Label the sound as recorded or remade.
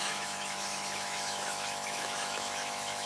remade